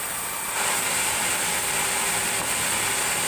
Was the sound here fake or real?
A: real